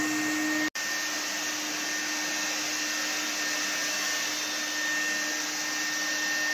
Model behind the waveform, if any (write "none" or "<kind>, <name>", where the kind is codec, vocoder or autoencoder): none